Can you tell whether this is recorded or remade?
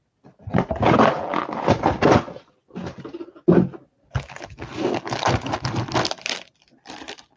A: recorded